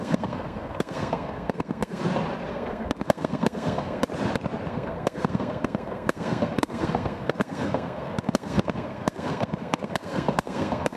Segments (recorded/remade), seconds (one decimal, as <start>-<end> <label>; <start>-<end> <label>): 0.0-2.0 remade; 2.0-2.5 recorded; 2.5-4.0 remade; 4.0-4.7 recorded; 4.7-11.0 remade